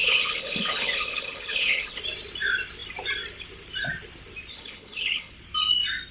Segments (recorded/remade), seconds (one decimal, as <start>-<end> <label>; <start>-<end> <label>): 0.0-2.0 remade; 2.0-4.5 recorded; 4.5-5.3 remade; 5.3-6.1 recorded

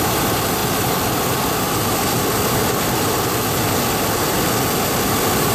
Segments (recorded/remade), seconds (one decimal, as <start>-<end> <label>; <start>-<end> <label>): 0.0-5.5 recorded

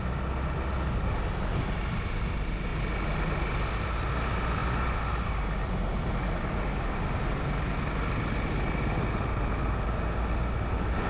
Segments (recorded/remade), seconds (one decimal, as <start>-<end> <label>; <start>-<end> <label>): 0.0-11.1 recorded

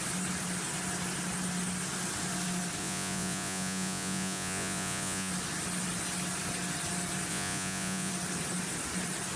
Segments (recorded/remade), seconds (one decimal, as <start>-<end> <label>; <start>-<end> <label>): 0.0-2.8 recorded; 2.8-5.3 remade; 5.3-7.3 recorded; 7.3-8.1 remade; 8.1-9.4 recorded